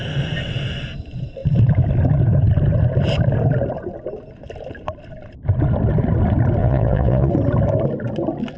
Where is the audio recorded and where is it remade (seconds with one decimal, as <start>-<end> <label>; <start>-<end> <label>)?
0.0-6.6 recorded; 6.6-7.3 remade; 7.3-8.6 recorded